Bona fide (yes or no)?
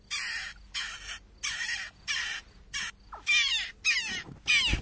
yes